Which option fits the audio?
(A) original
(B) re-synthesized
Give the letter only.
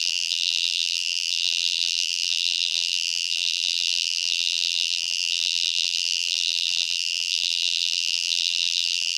B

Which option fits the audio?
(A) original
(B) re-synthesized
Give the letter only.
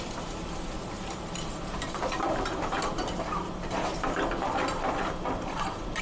B